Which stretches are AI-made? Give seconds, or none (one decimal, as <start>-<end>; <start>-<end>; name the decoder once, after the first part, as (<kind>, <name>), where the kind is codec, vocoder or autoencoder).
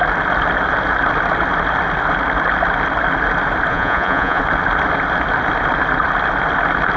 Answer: 3.7-4.4 (vocoder, Vocos)